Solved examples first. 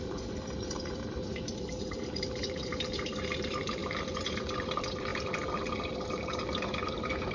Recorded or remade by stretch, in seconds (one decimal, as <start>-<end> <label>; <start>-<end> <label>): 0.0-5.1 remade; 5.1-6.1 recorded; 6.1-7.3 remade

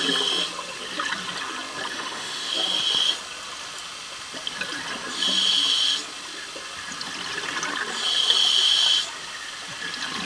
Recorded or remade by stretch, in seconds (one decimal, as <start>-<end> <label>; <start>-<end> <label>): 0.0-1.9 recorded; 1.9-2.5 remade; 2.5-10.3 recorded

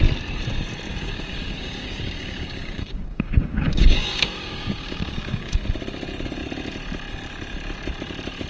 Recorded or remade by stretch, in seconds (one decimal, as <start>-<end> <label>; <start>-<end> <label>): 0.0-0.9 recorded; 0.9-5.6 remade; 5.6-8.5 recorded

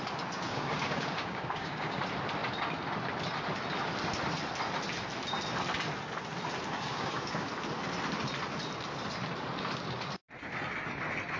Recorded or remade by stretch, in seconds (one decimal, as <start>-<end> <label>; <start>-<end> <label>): 0.0-0.5 recorded; 0.5-2.0 remade; 2.0-6.7 recorded; 6.7-7.5 remade; 7.5-11.4 recorded